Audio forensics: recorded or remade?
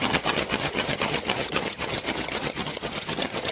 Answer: remade